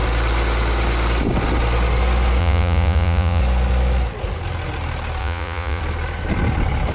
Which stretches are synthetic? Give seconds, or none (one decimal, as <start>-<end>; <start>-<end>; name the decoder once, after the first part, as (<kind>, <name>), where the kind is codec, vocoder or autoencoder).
2.4-3.4 (vocoder, Vocos); 5.2-5.8